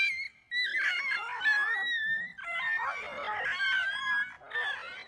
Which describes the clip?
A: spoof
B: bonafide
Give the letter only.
B